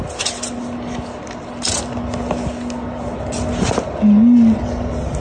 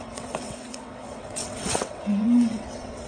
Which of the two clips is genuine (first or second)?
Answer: first